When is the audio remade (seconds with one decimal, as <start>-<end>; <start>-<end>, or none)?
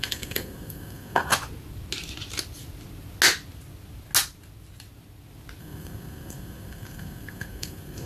0.0-1.3; 5.6-8.1